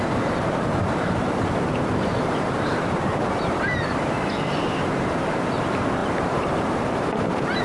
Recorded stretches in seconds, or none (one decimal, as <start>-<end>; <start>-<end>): 3.9-4.6